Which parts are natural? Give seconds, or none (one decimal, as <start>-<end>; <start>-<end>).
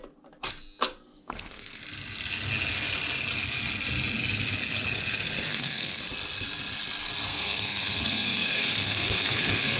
0.0-1.2; 1.8-5.5; 6.0-7.3